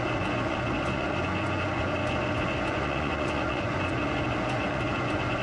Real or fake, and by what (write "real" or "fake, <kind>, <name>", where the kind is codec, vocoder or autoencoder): fake, vocoder, Vocos